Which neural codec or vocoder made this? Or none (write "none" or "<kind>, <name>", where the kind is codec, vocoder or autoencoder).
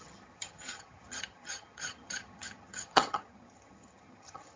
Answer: vocoder, HiFi-GAN